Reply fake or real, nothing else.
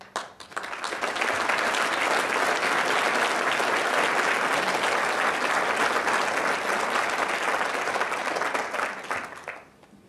real